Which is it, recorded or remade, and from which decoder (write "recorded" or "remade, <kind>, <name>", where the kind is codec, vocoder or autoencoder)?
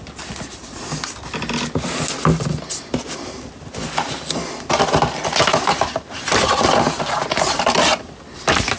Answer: recorded